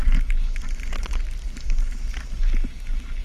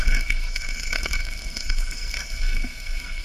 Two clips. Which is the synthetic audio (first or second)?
second